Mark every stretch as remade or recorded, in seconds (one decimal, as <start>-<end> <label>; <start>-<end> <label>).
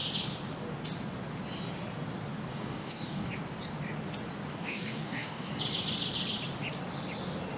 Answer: 0.0-2.5 recorded; 2.5-3.3 remade; 3.3-4.5 recorded; 4.5-5.5 remade; 5.5-7.6 recorded